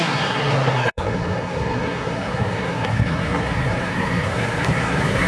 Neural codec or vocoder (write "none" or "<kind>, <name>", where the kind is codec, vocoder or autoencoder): codec, SNAC